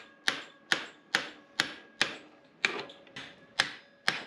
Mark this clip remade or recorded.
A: recorded